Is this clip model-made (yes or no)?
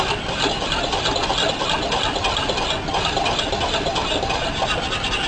no